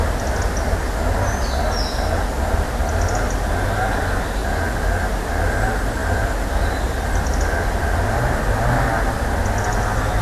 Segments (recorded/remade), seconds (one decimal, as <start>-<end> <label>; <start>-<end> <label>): 0.0-10.2 recorded